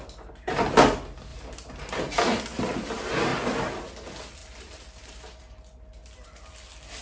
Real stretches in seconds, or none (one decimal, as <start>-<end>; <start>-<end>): 0.0-1.3; 2.0-3.3; 3.8-4.4; 5.4-6.0; 6.5-7.0